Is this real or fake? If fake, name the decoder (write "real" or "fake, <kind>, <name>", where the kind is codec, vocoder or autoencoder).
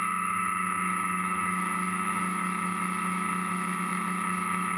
fake, autoencoder, DAC-VAE